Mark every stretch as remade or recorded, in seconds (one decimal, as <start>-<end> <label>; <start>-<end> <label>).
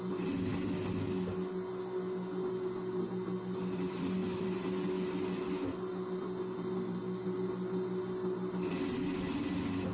0.0-9.9 recorded